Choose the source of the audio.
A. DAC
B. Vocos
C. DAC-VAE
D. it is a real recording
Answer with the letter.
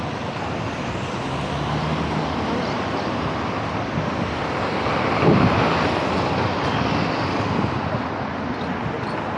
D